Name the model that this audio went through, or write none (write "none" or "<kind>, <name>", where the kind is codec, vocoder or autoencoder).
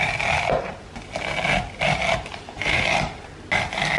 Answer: none